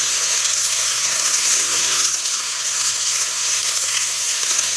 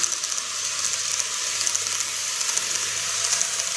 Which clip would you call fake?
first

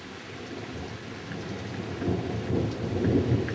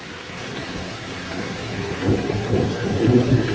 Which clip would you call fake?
second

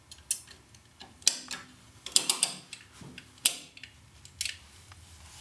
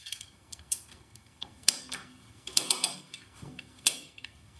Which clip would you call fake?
second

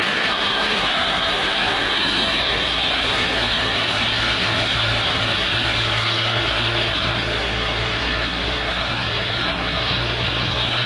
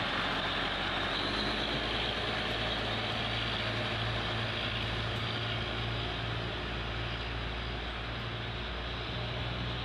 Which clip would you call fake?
first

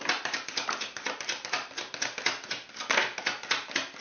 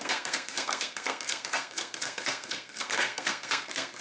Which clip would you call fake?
second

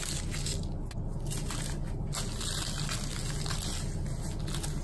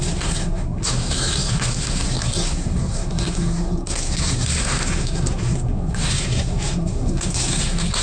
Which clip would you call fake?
second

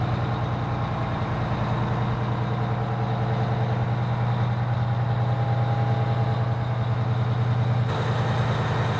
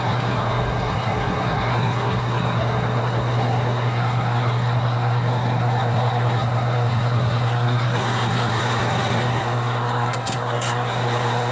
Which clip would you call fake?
second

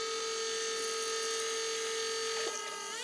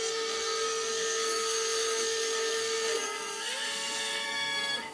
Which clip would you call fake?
second